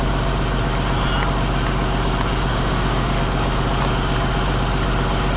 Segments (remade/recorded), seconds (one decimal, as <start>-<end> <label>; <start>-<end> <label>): 0.0-2.5 recorded; 2.5-3.2 remade; 3.2-5.4 recorded